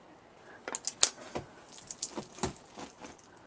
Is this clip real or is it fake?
real